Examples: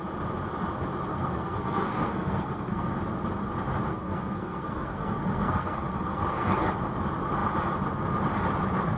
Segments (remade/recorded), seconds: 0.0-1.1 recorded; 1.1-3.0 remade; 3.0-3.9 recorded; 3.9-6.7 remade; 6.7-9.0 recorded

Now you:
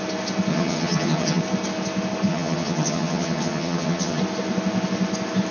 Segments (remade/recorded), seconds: 0.0-0.5 recorded; 0.5-1.4 remade; 1.4-2.3 recorded; 2.3-4.2 remade; 4.2-5.5 recorded

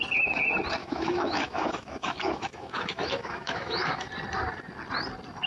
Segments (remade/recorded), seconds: 0.0-0.8 recorded; 0.8-4.1 remade; 4.1-5.5 recorded

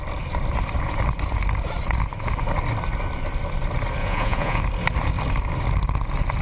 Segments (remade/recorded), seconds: 0.0-4.0 recorded; 4.0-4.6 remade; 4.6-6.4 recorded

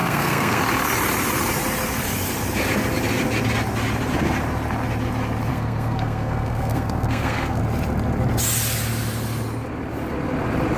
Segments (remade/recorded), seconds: 0.0-0.6 remade; 0.6-5.5 recorded; 5.5-7.6 remade; 7.6-10.8 recorded

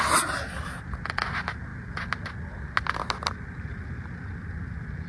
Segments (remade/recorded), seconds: 0.0-5.1 recorded

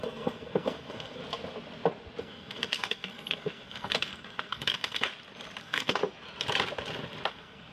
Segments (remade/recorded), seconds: 0.0-1.2 remade; 1.2-2.2 recorded; 2.2-5.1 remade; 5.1-5.6 recorded; 5.6-6.0 remade; 6.0-7.3 recorded; 7.3-7.7 remade

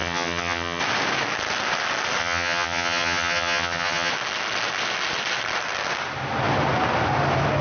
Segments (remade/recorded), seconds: 0.0-0.8 remade; 0.8-2.2 recorded; 2.2-4.1 remade; 4.1-7.6 recorded